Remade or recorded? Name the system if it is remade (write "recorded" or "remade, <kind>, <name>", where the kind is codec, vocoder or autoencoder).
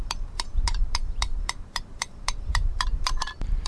remade, vocoder, BigVGAN v2